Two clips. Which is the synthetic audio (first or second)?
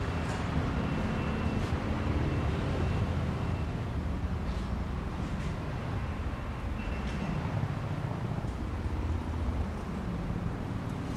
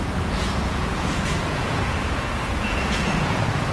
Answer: second